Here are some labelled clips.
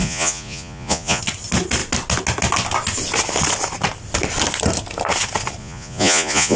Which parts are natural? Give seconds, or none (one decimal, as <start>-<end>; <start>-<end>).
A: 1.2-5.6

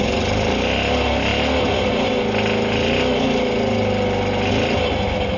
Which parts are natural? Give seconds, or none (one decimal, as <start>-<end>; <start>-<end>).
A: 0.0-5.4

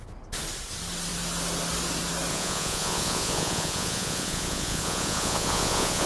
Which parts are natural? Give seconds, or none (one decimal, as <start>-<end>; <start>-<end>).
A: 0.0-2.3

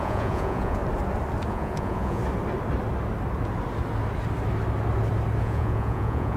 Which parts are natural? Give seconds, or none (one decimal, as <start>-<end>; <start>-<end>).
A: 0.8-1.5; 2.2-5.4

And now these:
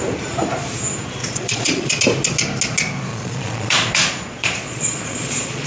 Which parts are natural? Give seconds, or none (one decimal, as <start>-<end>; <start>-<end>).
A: 0.0-1.2; 2.0-3.1